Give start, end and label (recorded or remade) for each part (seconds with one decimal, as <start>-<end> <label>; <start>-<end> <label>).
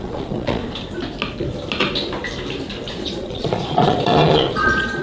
0.0-0.6 remade; 0.6-2.9 recorded; 2.9-5.0 remade